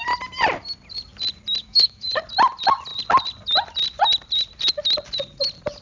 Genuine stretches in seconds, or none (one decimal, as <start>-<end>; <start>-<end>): 0.0-1.6; 2.2-5.8